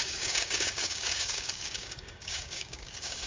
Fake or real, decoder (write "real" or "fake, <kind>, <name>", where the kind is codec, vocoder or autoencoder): fake, codec, DAC